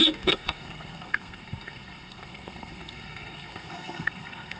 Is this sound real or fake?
fake